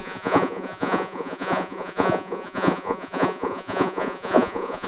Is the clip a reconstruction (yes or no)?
yes